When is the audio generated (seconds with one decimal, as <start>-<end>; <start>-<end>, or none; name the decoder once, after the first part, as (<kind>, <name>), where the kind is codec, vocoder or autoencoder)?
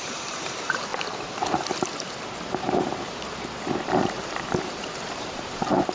0.0-5.9 (vocoder, BigVGAN v2)